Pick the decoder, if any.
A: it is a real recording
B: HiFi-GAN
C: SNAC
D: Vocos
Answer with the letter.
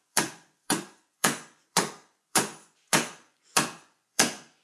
D